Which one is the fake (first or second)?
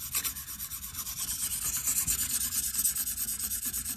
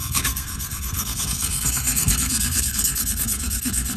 second